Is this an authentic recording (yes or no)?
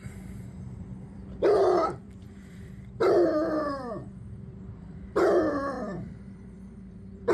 no